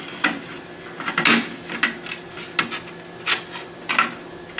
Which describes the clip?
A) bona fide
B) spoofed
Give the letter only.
A